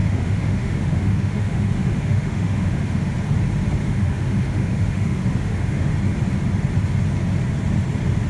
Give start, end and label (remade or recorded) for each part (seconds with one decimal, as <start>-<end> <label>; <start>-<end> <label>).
0.0-3.1 remade; 3.1-3.8 recorded; 3.8-5.9 remade; 5.9-8.3 recorded